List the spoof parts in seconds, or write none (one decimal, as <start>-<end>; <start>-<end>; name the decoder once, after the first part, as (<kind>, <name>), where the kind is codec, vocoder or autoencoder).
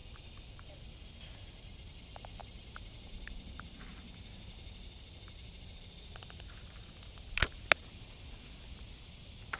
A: none